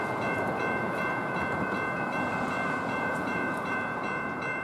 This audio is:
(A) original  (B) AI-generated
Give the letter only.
B